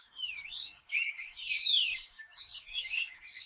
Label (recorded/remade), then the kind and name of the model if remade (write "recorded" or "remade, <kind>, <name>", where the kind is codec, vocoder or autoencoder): remade, codec, DAC